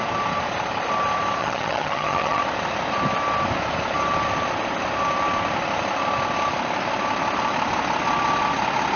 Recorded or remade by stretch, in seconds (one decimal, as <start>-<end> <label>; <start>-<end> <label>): 0.0-1.4 recorded; 1.4-2.4 remade; 2.4-9.0 recorded